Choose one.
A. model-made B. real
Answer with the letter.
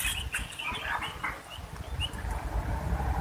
B